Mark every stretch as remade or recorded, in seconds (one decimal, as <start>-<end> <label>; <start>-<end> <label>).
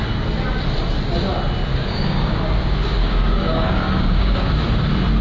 0.0-1.7 recorded; 1.7-2.4 remade; 2.4-3.0 recorded; 3.0-4.5 remade; 4.5-5.2 recorded